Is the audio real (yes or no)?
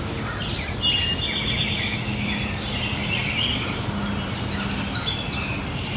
yes